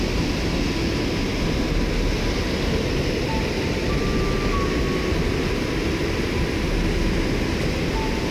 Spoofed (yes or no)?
no